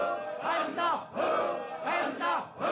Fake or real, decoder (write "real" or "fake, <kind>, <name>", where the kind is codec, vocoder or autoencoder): real